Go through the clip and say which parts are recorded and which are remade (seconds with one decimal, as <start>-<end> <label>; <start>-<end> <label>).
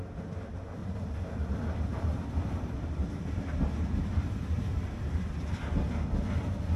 0.0-0.8 recorded; 0.8-3.5 remade; 3.5-4.7 recorded; 4.7-5.3 remade; 5.3-6.8 recorded